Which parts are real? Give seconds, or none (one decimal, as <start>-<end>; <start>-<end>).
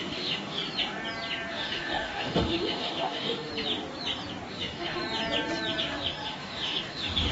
0.6-1.5; 3.5-4.5; 5.0-5.8